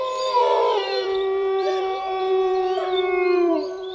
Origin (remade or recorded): remade